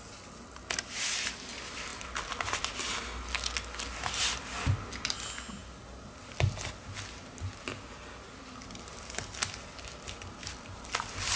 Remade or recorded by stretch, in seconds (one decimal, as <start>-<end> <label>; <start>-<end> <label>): 0.0-11.4 recorded